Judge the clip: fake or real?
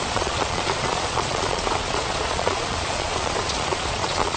fake